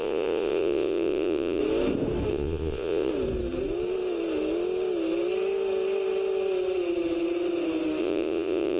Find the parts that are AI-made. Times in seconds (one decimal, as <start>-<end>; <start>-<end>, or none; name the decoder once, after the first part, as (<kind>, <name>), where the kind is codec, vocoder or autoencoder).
0.0-1.6 (vocoder, Vocos); 2.3-3.1; 8.0-8.8